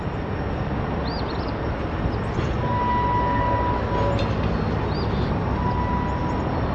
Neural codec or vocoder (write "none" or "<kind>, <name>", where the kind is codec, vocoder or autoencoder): none